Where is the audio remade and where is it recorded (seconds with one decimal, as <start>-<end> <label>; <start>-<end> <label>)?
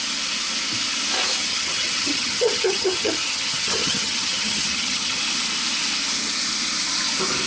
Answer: 0.0-1.5 recorded; 1.5-5.2 remade; 5.2-7.5 recorded